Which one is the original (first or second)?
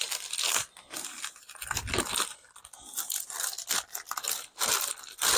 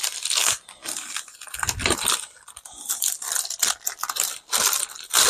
first